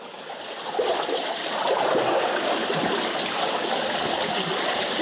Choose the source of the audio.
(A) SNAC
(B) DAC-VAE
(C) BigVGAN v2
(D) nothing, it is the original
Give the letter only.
D